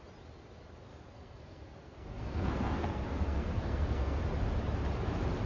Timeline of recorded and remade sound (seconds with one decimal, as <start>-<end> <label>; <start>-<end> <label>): 0.0-0.9 recorded; 0.9-4.2 remade; 4.2-5.5 recorded